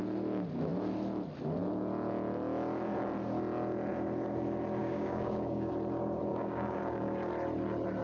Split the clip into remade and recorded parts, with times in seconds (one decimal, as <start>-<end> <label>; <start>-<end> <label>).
0.0-4.8 recorded; 4.8-5.7 remade; 5.7-6.3 recorded; 6.3-7.3 remade; 7.3-8.0 recorded